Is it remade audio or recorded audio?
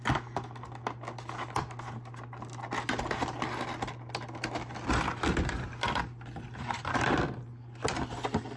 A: recorded